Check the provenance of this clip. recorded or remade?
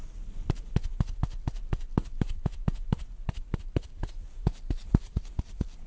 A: recorded